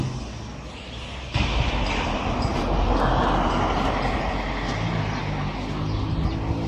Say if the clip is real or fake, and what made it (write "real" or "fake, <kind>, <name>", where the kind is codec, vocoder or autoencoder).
real